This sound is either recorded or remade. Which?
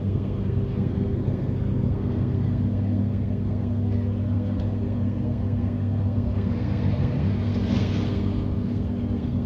remade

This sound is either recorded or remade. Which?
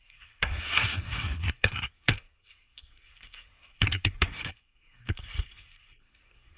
remade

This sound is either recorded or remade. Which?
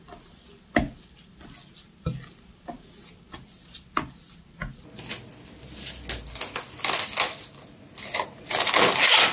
recorded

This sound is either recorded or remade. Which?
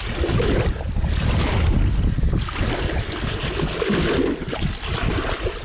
recorded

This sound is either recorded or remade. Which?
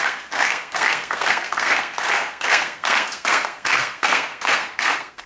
remade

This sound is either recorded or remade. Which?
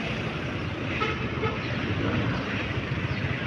recorded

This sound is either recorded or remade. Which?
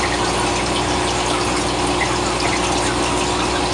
recorded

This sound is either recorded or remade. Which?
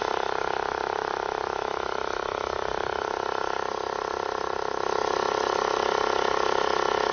recorded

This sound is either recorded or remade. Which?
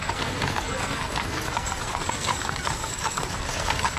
remade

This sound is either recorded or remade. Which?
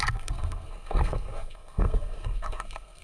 remade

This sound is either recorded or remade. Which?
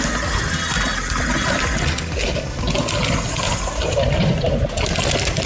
recorded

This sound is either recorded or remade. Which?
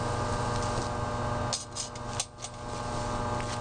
recorded